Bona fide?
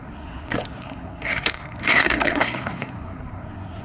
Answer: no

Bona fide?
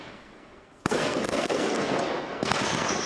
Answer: no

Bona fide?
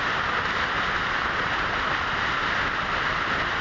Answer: yes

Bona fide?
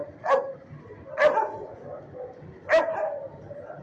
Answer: yes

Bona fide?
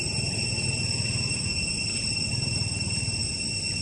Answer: yes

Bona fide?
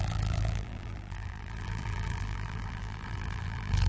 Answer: no